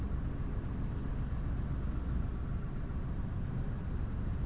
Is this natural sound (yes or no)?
yes